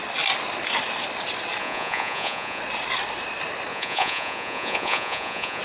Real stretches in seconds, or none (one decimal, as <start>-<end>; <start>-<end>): 0.0-1.6; 2.6-3.7